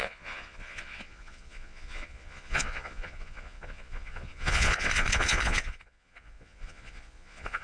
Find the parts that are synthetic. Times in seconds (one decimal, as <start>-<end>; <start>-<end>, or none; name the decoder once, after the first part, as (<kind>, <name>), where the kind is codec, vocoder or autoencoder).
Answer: 0.0-7.6 (vocoder, Vocos)